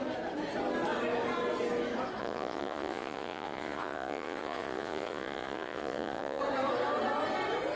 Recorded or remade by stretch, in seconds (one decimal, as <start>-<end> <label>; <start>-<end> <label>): 0.0-2.2 recorded; 2.2-6.4 remade; 6.4-7.8 recorded